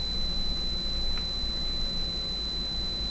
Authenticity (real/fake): real